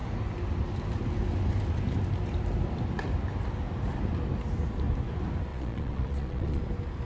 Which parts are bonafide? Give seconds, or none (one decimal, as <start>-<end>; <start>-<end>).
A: 0.0-5.5; 6.6-7.1